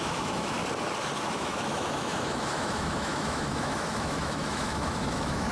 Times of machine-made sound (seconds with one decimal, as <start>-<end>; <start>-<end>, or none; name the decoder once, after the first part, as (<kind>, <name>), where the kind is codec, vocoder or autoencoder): 0.0-0.6 (autoencoder, DAC-VAE); 1.2-5.5